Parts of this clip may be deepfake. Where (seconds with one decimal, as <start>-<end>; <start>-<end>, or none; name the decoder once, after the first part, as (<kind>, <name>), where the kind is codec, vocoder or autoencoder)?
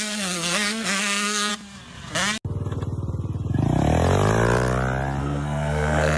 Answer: 0.0-1.5 (codec, SNAC); 5.2-6.2